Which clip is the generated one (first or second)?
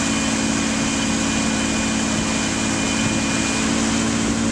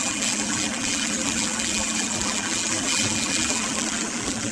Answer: second